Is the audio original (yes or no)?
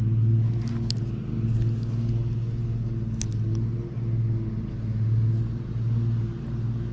yes